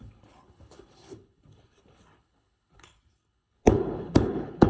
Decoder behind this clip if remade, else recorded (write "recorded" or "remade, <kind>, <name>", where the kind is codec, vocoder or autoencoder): remade, codec, HILCodec